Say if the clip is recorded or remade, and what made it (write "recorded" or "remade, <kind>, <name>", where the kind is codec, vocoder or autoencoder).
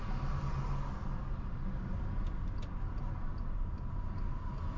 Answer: recorded